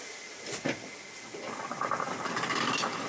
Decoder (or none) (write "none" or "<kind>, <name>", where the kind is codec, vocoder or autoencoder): none